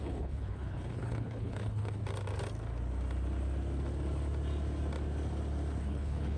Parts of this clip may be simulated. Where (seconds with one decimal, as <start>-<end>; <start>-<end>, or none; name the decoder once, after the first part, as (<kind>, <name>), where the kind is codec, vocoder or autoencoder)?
0.0-2.0 (codec, HILCodec); 5.8-6.4

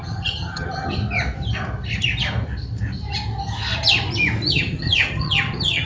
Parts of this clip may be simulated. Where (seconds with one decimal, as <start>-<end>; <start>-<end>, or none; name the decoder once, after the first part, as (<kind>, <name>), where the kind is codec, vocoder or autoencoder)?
0.0-1.0 (vocoder, HiFi-GAN); 4.5-5.9

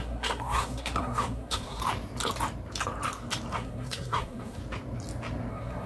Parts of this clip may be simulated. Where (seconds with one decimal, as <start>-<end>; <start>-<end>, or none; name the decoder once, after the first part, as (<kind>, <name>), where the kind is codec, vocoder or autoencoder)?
0.0-1.8 (codec, SNAC); 3.5-4.6; 5.5-5.9

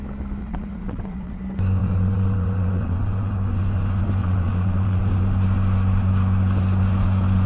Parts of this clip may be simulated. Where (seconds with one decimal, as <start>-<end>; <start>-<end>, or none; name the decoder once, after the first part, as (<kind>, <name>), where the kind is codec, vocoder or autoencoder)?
0.4-1.4 (vocoder, WaveNeXt); 1.8-3.3; 4.2-5.0

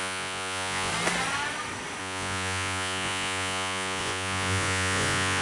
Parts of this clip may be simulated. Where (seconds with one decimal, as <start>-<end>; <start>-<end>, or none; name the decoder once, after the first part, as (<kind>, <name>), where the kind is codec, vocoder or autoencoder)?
0.0-0.9 (vocoder, Vocos); 2.0-5.4

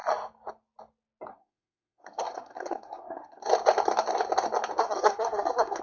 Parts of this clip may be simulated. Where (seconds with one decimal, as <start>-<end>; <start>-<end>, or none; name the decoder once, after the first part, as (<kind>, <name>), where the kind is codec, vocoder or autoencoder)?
1.3-3.5 (codec, SNAC); 4.8-5.8

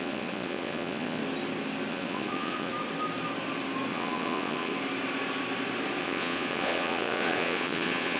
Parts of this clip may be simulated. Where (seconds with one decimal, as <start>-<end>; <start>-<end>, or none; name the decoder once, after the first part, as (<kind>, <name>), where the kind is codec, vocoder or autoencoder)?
0.0-1.2 (vocoder, Vocos); 1.9-2.7; 3.9-4.7; 6.0-8.2